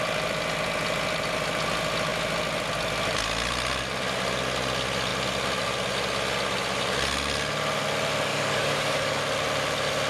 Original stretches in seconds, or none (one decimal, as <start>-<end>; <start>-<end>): 0.0-8.3; 9.2-10.1